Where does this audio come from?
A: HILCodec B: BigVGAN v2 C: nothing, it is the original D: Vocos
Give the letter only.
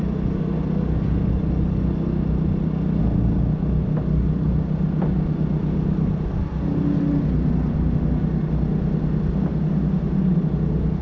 C